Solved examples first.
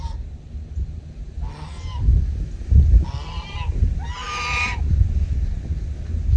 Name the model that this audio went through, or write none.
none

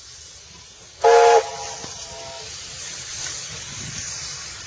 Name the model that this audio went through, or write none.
none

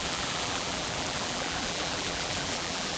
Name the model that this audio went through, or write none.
vocoder, BigVGAN v2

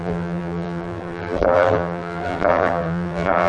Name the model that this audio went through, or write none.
vocoder, BigVGAN v2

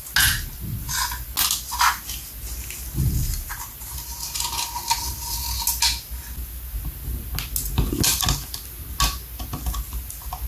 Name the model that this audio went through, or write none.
none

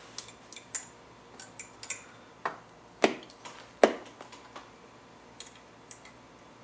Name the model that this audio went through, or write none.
none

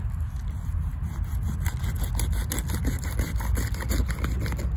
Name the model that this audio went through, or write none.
none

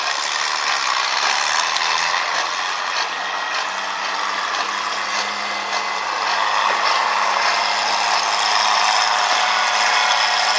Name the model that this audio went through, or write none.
none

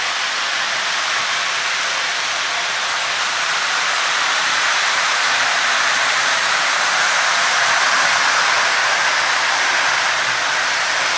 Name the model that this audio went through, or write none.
vocoder, BigVGAN v2